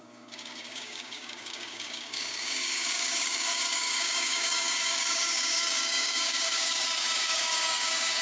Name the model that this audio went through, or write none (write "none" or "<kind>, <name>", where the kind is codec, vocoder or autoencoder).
codec, DAC